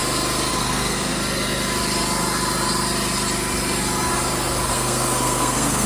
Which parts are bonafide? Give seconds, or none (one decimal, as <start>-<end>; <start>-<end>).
0.0-0.5; 1.2-4.7